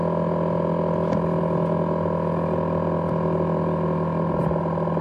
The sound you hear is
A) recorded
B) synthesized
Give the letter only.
A